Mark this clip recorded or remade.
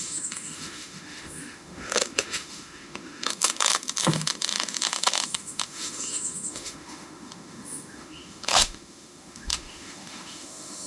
remade